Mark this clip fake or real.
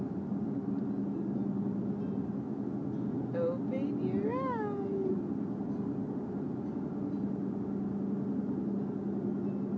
real